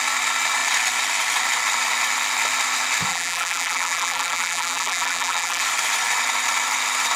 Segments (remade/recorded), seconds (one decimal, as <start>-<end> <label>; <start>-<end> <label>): 0.0-3.1 recorded; 3.1-5.6 remade; 5.6-7.2 recorded